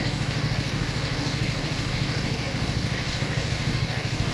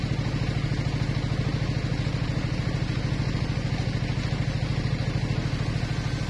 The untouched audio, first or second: second